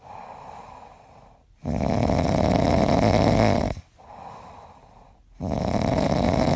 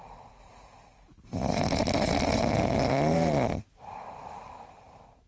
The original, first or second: first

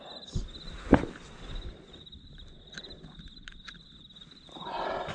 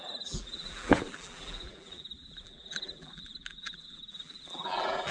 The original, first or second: first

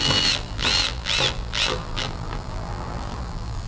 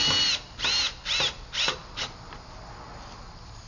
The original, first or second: second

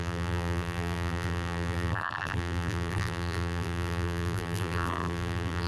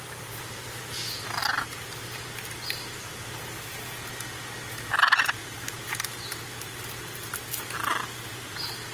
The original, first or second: second